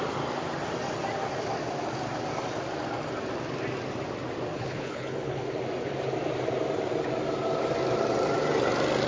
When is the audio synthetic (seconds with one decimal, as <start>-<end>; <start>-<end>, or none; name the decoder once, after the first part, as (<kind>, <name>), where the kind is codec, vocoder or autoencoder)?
4.5-5.5 (codec, HILCodec)